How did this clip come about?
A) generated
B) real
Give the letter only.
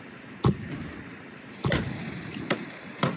A